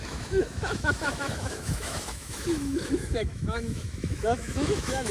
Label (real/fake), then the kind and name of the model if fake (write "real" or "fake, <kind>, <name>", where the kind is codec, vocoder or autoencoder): fake, autoencoder, DAC-VAE